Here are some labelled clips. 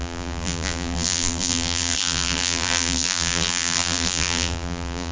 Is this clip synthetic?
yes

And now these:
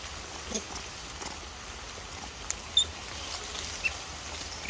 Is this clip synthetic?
no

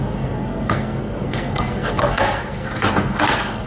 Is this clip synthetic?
yes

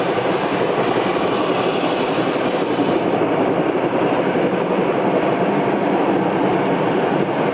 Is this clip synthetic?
no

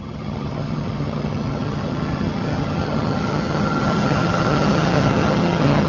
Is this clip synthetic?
yes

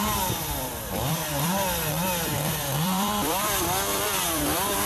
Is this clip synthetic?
yes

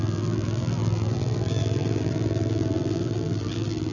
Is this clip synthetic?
yes